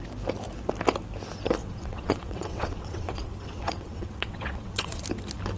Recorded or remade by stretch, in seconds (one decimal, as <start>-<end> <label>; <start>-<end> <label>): 0.0-1.6 recorded; 1.6-5.0 remade; 5.0-5.6 recorded